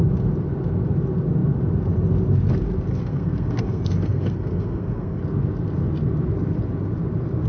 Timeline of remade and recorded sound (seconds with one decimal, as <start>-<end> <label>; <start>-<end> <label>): 0.0-2.9 recorded; 2.9-5.2 remade; 5.2-7.5 recorded